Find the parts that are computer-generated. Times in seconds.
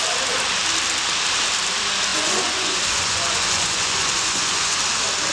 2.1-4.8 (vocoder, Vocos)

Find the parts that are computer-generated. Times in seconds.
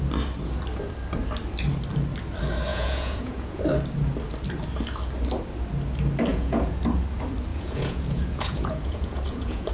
2.7-3.6 (vocoder, Vocos); 6.3-6.8; 7.5-9.7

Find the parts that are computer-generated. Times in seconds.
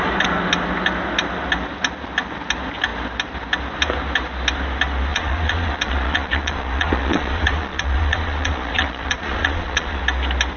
5.1-10.0 (vocoder, Vocos)